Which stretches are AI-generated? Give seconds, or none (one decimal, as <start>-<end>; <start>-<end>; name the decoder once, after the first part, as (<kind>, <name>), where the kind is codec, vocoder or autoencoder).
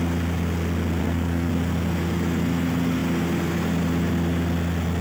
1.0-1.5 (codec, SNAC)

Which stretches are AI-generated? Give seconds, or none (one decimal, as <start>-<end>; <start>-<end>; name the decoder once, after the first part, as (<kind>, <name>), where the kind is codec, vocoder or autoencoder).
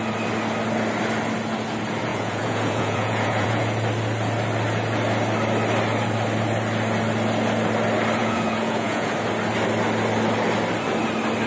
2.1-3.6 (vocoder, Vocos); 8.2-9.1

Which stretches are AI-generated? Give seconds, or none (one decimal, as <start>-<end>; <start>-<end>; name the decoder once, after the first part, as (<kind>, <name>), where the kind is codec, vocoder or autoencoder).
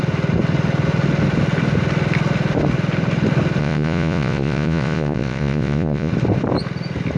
3.6-6.1 (vocoder, Vocos)